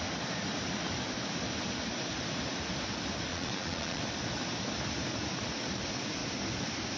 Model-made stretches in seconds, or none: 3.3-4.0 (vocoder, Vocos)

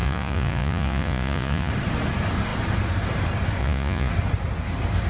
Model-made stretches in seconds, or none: 0.0-1.7 (vocoder, Vocos); 3.6-4.1

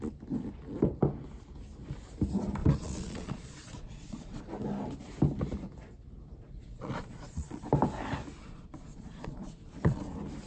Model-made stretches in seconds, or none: 2.6-4.4 (vocoder, Vocos); 6.4-7.6; 8.4-10.0

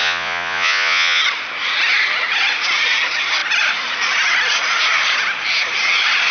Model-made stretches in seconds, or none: 0.0-1.2 (vocoder, Vocos)

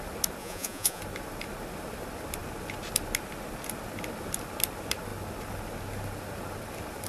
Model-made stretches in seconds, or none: 0.4-1.0 (vocoder, Vocos)

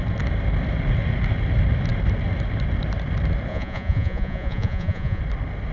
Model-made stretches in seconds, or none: 3.5-5.2 (vocoder, Vocos)

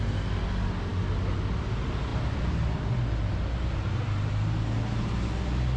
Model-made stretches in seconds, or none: none